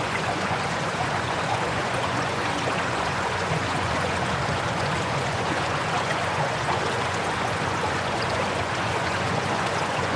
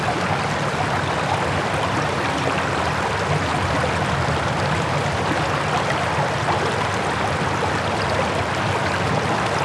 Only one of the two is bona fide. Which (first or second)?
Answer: second